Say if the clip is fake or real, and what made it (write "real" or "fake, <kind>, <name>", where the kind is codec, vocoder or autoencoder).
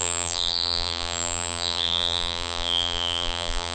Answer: fake, vocoder, BigVGAN v2